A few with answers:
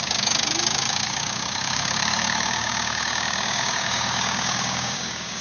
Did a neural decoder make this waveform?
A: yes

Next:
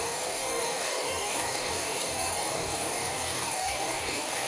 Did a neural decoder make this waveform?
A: yes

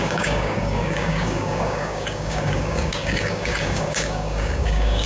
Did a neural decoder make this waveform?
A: yes